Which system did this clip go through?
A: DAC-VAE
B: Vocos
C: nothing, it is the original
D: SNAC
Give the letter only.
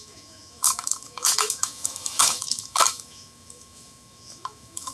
A